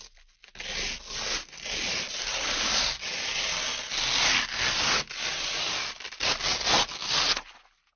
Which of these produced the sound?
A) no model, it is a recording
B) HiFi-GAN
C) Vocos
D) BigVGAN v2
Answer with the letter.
A